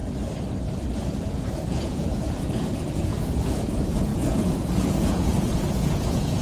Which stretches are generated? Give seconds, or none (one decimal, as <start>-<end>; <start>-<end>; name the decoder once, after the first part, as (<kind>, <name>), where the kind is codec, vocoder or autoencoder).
1.2-6.4 (vocoder, Vocos)